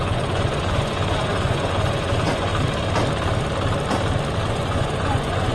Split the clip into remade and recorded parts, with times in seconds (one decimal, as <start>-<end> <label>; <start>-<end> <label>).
0.0-2.5 remade; 2.5-4.5 recorded; 4.5-5.5 remade